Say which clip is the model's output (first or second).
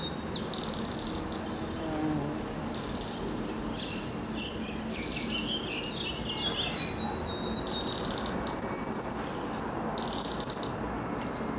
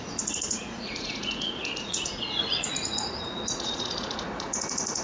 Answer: second